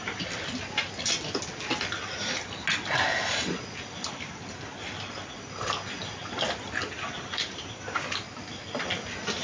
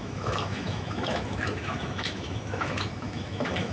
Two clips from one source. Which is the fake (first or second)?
second